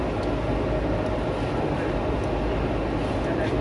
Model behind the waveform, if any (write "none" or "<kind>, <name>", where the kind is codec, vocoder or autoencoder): none